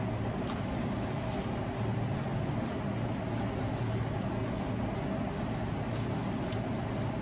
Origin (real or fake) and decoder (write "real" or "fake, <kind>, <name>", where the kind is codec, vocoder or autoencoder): real